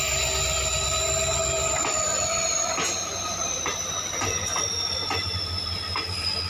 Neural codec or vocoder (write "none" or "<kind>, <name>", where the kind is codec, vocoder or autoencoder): none